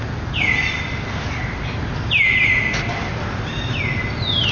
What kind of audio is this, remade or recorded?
recorded